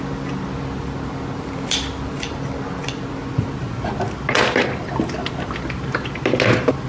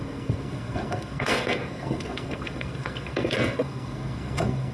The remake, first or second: second